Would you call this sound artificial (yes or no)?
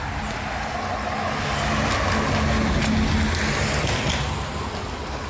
no